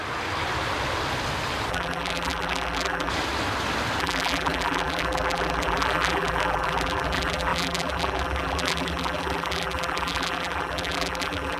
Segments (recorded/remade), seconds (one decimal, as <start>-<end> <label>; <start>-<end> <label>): 0.0-1.7 recorded; 1.7-3.1 remade; 3.1-4.0 recorded; 4.0-11.6 remade